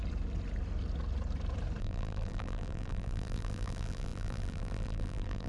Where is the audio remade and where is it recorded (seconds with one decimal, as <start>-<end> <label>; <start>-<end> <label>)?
0.0-1.8 recorded; 1.8-5.5 remade

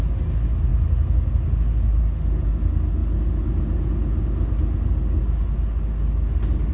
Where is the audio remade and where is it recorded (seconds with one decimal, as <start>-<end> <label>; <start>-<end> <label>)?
0.0-6.7 recorded

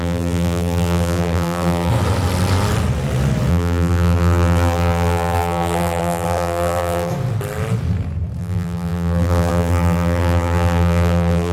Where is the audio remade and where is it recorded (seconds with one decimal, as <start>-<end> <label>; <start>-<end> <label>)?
0.0-1.9 remade; 1.9-3.5 recorded; 3.5-7.1 remade; 7.1-8.4 recorded; 8.4-11.5 remade